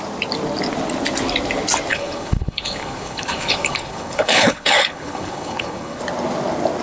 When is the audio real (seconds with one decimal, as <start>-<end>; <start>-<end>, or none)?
0.0-1.9; 6.0-6.8